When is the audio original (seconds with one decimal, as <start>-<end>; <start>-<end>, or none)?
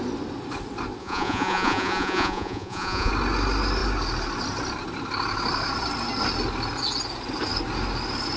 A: 0.0-1.0; 3.1-8.4